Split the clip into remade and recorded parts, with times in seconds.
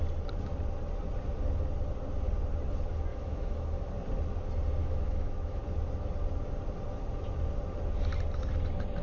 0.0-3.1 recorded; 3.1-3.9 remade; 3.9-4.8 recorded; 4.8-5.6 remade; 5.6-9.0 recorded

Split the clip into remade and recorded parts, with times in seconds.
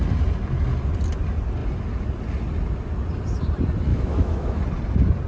0.0-3.9 recorded; 3.9-4.6 remade; 4.6-5.3 recorded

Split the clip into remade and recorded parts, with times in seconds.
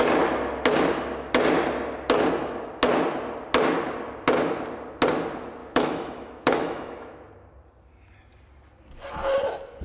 0.0-5.6 recorded; 5.6-7.3 remade; 7.3-9.8 recorded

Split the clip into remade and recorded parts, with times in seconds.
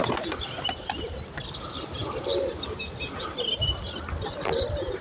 0.0-5.0 recorded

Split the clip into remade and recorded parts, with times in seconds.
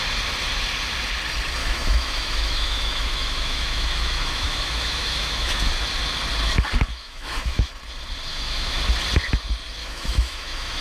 0.0-1.6 recorded; 1.6-5.7 remade; 5.7-6.9 recorded; 6.9-7.7 remade; 7.7-8.3 recorded; 8.3-8.8 remade; 8.8-9.8 recorded; 9.8-10.8 remade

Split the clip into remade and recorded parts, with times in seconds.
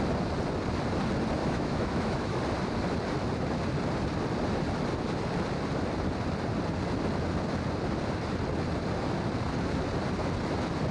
0.0-1.4 recorded; 1.4-2.4 remade; 2.4-10.9 recorded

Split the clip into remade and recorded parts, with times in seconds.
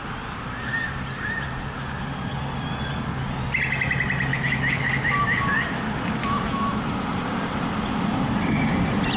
0.0-4.3 recorded; 4.3-5.4 remade; 5.4-6.2 recorded; 6.2-6.8 remade; 6.8-9.2 recorded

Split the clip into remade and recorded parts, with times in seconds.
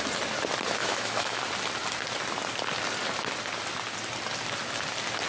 0.0-0.8 recorded; 0.8-1.4 remade; 1.4-5.3 recorded